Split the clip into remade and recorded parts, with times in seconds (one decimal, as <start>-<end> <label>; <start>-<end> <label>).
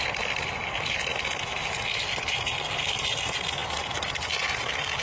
0.0-5.0 recorded